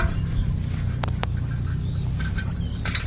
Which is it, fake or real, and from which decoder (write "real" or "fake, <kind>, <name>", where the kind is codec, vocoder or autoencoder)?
real